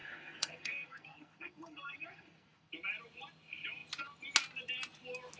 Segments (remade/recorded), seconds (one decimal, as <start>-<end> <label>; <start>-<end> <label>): 0.0-2.7 remade; 2.7-5.4 recorded